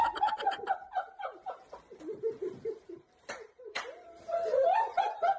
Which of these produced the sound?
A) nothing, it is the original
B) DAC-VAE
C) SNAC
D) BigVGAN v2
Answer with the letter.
D